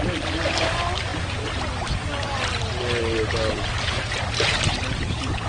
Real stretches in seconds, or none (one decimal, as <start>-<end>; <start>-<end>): 0.0-5.5